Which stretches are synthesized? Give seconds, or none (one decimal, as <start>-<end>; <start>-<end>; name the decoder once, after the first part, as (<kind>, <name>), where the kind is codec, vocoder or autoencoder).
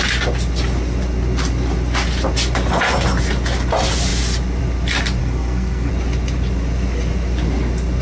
5.2-5.9 (codec, SNAC)